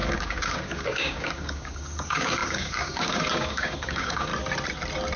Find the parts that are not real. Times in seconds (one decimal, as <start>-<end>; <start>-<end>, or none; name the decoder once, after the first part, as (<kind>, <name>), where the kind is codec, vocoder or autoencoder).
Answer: 0.0-4.3 (codec, DAC)